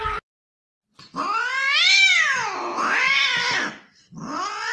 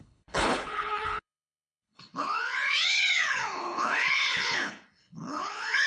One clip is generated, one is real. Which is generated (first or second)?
second